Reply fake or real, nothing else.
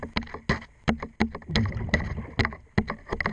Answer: real